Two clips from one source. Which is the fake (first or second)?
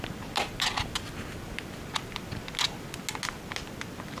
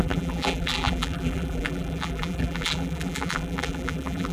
second